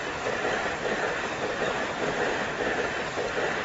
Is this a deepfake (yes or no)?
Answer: no